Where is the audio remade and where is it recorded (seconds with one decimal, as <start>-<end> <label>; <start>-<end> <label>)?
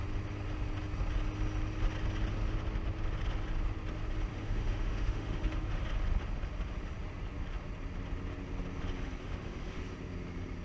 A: 0.0-4.3 recorded; 4.3-5.7 remade; 5.7-9.2 recorded; 9.2-9.8 remade; 9.8-10.6 recorded